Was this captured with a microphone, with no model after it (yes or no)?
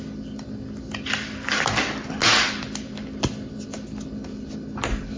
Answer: yes